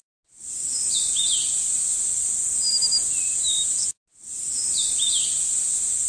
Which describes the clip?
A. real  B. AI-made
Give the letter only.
A